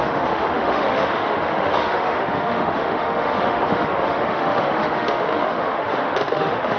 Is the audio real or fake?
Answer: fake